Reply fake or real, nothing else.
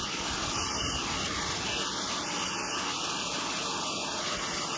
real